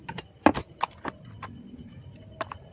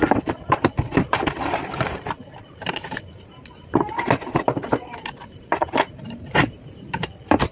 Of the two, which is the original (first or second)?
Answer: first